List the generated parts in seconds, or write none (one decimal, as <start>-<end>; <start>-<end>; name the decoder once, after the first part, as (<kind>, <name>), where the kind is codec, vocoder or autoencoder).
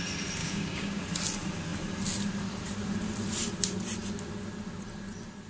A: 0.4-1.0 (codec, DAC)